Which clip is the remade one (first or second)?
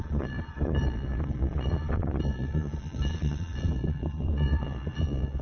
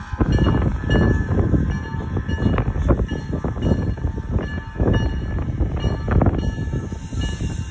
first